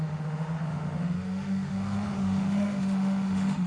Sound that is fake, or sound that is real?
fake